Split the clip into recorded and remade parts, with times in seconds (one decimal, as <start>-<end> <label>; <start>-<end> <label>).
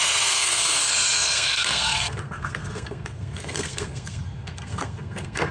0.0-5.5 remade